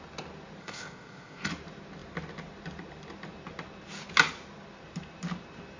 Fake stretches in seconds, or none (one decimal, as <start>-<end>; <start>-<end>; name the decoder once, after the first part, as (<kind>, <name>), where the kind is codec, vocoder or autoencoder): 0.6-1.5 (codec, ZipCodec)